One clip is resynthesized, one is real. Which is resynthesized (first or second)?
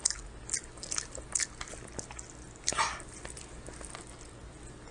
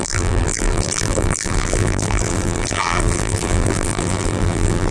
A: second